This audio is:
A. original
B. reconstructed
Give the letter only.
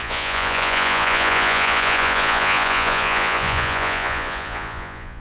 B